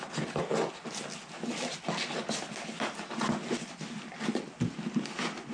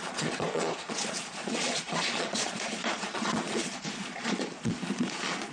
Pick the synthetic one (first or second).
second